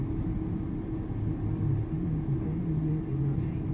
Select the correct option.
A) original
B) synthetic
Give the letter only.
A